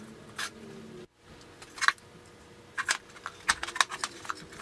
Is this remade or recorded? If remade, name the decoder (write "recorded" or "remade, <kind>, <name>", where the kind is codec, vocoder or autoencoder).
recorded